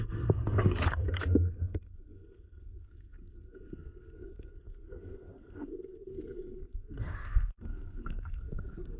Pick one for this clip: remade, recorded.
remade